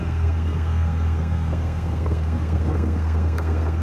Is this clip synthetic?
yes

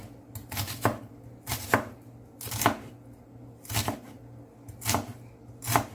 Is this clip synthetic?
no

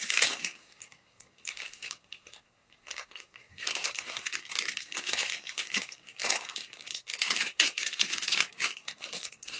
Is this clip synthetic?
yes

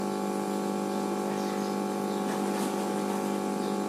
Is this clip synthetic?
no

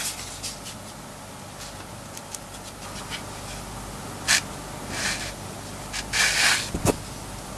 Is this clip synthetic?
no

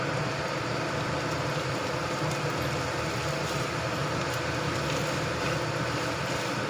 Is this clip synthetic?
no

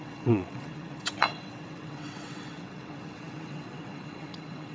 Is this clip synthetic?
yes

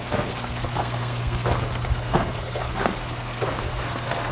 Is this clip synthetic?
yes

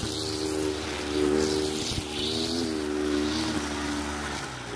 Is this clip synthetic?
no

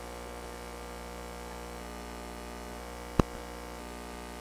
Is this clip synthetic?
no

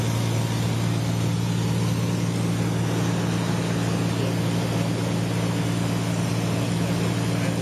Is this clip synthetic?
no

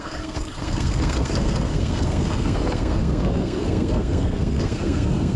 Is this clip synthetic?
yes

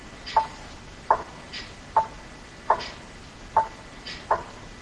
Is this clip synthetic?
no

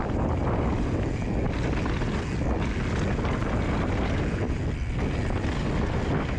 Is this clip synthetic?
no